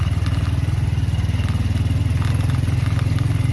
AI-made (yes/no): no